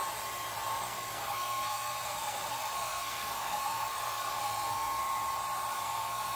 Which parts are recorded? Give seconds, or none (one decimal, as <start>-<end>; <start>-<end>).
0.0-0.7; 5.0-5.7